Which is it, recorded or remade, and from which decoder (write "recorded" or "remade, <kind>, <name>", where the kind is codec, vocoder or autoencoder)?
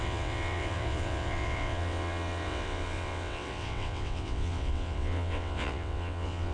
remade, vocoder, WaveNeXt